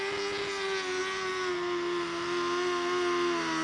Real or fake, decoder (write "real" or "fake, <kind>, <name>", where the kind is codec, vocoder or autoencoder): real